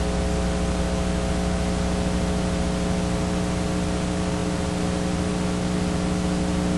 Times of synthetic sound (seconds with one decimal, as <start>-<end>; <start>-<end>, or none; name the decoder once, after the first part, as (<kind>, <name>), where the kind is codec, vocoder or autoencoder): none